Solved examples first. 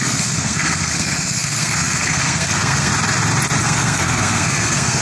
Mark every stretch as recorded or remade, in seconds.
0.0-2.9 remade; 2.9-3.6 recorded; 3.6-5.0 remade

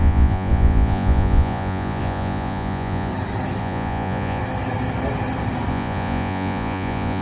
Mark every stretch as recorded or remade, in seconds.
0.0-3.1 remade; 3.1-3.6 recorded; 3.6-4.4 remade; 4.4-5.7 recorded; 5.7-7.2 remade

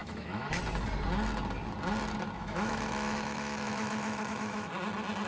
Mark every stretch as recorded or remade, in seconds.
0.0-0.6 remade; 0.6-2.4 recorded; 2.4-4.7 remade; 4.7-5.3 recorded

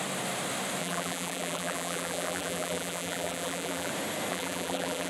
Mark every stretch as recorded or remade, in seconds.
0.0-0.8 recorded; 0.8-3.9 remade; 3.9-4.3 recorded; 4.3-5.1 remade

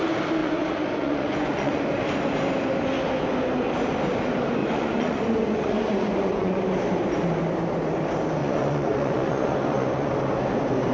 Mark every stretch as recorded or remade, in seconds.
0.0-0.4 recorded; 0.4-1.8 remade; 1.8-4.6 recorded; 4.6-6.6 remade; 6.6-8.4 recorded; 8.4-10.1 remade; 10.1-10.9 recorded

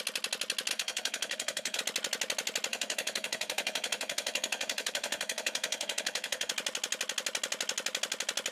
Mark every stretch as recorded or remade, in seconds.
0.0-0.7 recorded; 0.7-1.8 remade; 1.8-2.7 recorded; 2.7-6.5 remade; 6.5-8.5 recorded

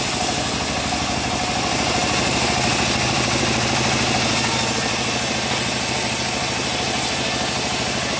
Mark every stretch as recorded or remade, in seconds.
0.0-8.2 recorded

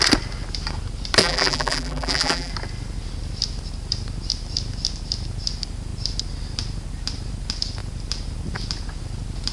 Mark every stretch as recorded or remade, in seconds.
0.0-1.2 recorded; 1.2-2.5 remade; 2.5-9.5 recorded